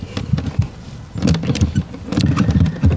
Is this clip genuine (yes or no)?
yes